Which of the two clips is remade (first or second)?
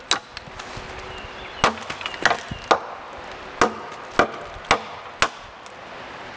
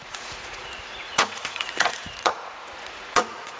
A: second